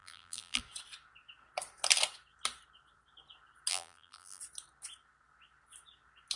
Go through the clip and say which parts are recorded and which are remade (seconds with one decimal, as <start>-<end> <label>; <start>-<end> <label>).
0.0-0.6 remade; 0.6-3.7 recorded; 3.7-4.4 remade; 4.4-6.4 recorded